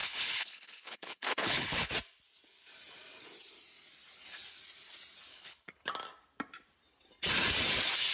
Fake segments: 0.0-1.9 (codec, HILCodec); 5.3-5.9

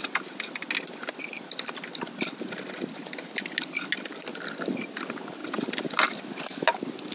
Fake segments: none

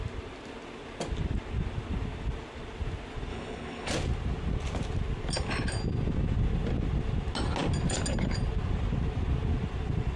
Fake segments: 3.3-3.9 (codec, HILCodec)

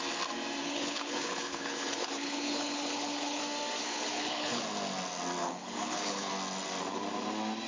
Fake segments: 0.6-3.4 (codec, HILCodec); 3.8-4.6; 5.4-6.3

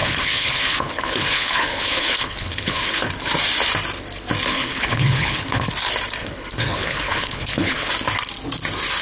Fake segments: 0.0-3.1 (codec, HILCodec); 4.5-5.7; 6.2-7.9

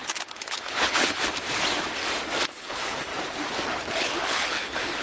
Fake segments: 0.0-1.2 (codec, HILCodec); 2.5-3.1; 4.0-5.0